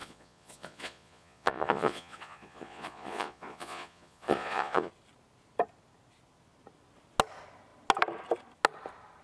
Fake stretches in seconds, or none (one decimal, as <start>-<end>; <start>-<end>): 0.0-4.9